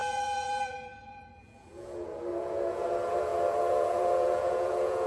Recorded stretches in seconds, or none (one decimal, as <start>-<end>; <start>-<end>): none